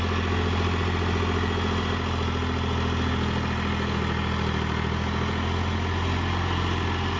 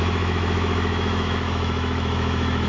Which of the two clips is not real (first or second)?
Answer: second